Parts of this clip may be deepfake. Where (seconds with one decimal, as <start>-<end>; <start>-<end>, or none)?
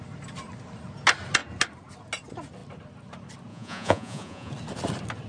3.5-4.5